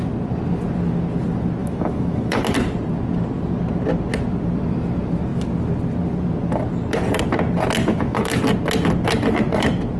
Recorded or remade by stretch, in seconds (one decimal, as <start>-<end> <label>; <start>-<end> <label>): 0.0-1.6 recorded; 1.6-2.4 remade; 2.4-7.9 recorded; 7.9-8.4 remade; 8.4-10.0 recorded